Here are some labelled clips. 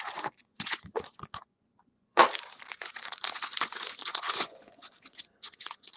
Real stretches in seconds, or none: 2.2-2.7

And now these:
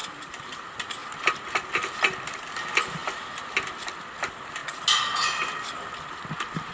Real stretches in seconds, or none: 0.6-6.7

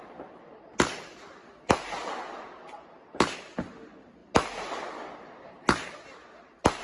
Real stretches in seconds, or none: 0.0-6.8

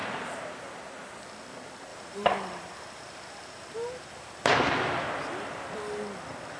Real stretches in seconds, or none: 0.6-1.9; 4.5-6.6

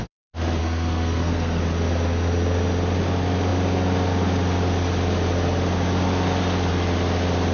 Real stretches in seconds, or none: 0.0-0.6; 1.6-7.5

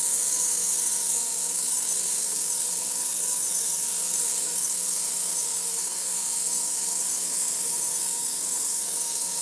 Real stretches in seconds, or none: none

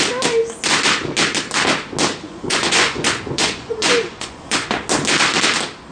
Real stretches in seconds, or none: 0.0-2.3; 4.8-5.9

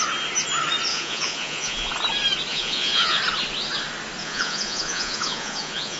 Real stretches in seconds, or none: 0.0-0.9; 1.9-2.5; 3.2-4.2